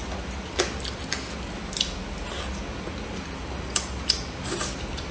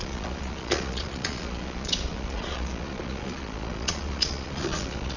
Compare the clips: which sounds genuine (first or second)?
first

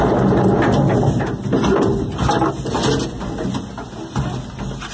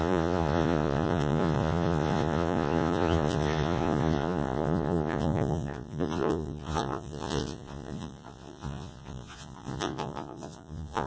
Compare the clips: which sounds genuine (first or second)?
first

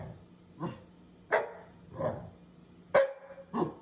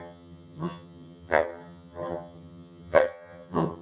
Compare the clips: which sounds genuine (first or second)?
first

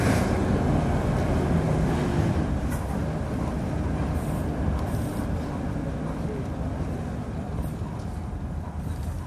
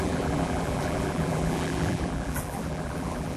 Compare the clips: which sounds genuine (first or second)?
first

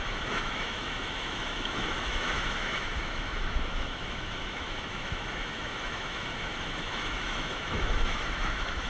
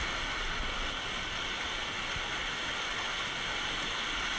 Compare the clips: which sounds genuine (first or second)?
second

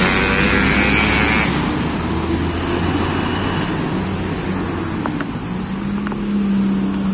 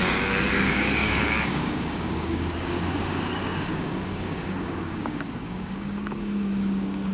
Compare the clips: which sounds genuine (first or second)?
first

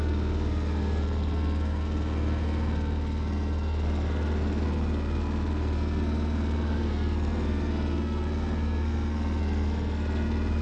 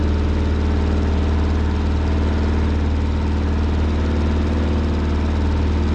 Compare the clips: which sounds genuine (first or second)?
second